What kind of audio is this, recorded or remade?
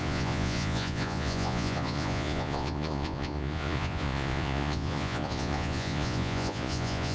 remade